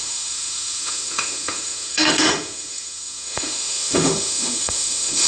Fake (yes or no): yes